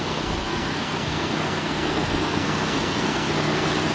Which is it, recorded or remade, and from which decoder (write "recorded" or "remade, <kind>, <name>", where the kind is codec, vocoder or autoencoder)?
remade, codec, SNAC